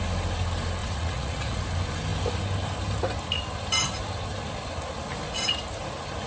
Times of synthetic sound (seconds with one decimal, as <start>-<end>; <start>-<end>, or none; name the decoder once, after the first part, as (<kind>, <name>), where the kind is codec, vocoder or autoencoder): 0.8-1.6 (vocoder, Vocos)